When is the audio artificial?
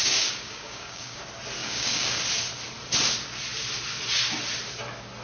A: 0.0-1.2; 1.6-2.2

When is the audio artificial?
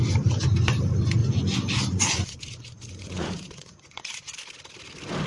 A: 1.2-4.4